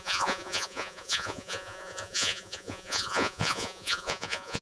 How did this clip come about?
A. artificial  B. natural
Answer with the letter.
A